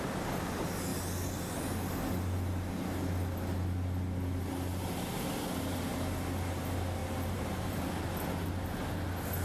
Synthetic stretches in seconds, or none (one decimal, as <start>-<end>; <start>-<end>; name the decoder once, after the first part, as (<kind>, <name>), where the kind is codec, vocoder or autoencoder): 7.0-7.8 (vocoder, BigVGAN v2)